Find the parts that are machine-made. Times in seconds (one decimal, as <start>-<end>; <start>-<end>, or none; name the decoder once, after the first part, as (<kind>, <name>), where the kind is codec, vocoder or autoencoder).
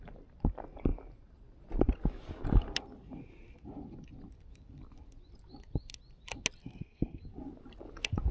6.6-7.2 (codec, SNAC)